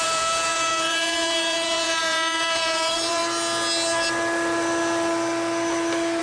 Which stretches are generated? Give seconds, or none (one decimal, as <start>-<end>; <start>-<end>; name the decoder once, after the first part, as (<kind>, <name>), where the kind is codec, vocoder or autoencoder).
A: 0.0-3.2 (vocoder, Vocos)